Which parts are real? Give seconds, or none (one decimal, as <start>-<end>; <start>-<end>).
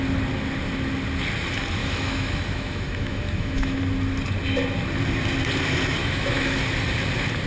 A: 0.0-1.8; 3.8-6.0; 6.6-7.5